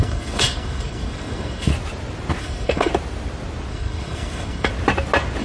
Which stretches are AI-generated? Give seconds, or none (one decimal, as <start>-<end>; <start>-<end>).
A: 0.0-1.7; 2.4-2.9; 3.7-4.7